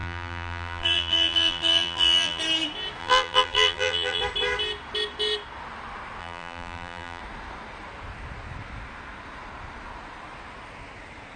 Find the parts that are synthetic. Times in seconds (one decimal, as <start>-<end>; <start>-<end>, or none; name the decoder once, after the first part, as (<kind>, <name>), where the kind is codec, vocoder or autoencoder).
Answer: 0.0-2.4 (vocoder, BigVGAN v2); 3.0-4.2; 6.2-7.2